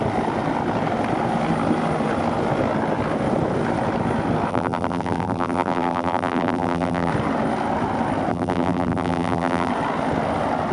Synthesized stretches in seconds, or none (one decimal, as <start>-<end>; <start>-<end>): 4.5-7.1; 8.3-9.7